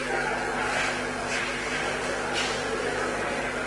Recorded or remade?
recorded